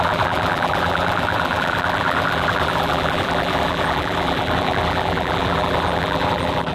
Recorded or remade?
remade